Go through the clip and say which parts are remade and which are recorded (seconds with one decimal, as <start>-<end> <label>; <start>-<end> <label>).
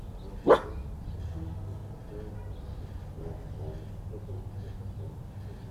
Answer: 0.0-5.7 recorded